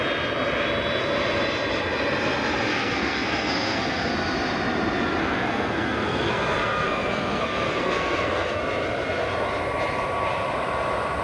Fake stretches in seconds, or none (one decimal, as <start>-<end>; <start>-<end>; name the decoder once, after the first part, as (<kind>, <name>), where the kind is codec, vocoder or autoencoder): 2.7-4.1 (codec, SNAC); 5.2-8.6